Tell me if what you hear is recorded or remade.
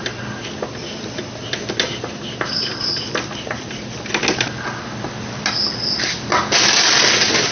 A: recorded